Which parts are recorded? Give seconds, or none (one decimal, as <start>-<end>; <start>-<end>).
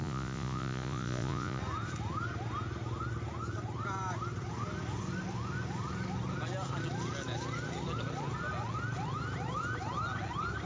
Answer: 1.6-10.7